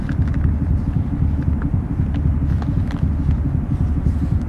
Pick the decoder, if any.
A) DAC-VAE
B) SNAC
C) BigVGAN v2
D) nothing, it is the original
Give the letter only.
D